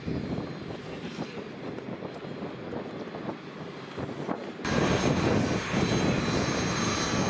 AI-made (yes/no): no